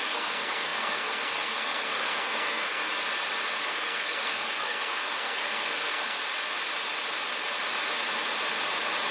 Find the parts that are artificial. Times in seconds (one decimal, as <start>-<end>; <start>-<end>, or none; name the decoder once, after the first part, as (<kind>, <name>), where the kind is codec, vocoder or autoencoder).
0.0-2.8 (codec, SNAC); 3.7-6.2